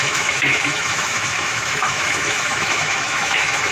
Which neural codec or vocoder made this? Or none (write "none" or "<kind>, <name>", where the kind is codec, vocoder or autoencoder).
autoencoder, DAC-VAE